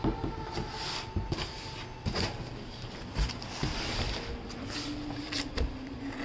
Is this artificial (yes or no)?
no